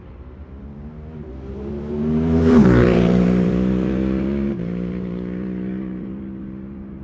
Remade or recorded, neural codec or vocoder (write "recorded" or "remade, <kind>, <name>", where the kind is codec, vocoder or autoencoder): remade, vocoder, BigVGAN v2